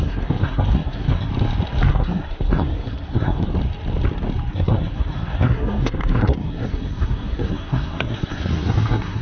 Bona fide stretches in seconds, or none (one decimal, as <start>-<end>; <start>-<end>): 1.3-1.9; 3.5-4.5